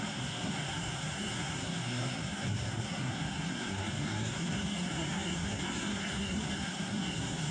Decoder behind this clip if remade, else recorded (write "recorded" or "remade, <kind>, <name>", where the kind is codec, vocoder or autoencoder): remade, codec, SNAC